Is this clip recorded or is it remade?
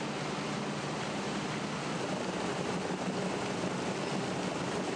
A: recorded